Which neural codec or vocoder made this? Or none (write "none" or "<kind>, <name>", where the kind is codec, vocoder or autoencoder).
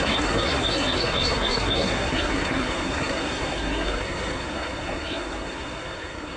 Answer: codec, SNAC